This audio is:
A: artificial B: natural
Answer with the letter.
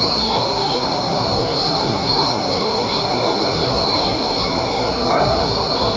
A